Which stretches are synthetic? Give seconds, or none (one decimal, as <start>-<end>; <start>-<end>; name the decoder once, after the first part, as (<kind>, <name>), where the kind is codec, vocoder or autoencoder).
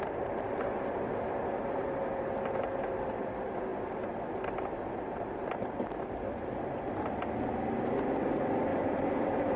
8.7-9.6 (vocoder, BigVGAN v2)